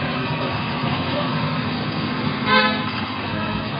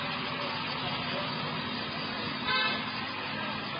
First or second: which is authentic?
second